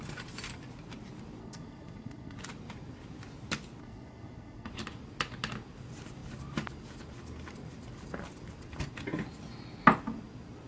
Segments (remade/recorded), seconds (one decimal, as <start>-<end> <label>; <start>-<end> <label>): 0.0-1.4 recorded; 1.4-2.4 remade; 2.4-3.8 recorded; 3.8-4.7 remade; 4.7-10.7 recorded

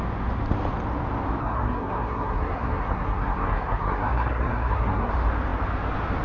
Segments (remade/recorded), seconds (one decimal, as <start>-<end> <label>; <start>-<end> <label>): 0.0-1.4 recorded; 1.4-5.1 remade; 5.1-6.2 recorded

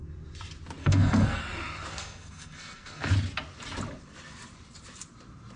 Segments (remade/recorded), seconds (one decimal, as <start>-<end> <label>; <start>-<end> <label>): 0.0-0.8 recorded; 0.8-1.4 remade; 1.4-1.9 recorded; 1.9-3.1 remade; 3.1-5.6 recorded

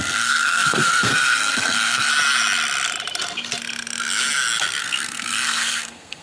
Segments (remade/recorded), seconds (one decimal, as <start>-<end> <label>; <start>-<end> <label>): 0.0-2.1 remade; 2.1-4.8 recorded; 4.8-6.2 remade